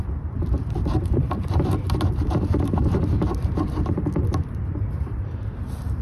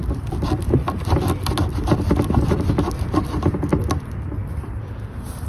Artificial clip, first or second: first